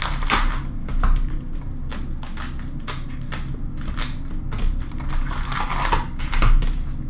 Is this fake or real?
real